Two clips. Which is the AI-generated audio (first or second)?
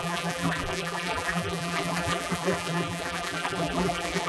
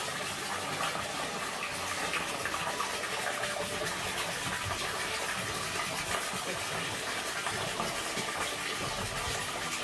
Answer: first